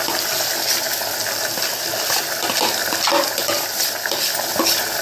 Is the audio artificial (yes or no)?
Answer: no